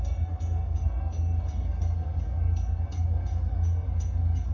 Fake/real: fake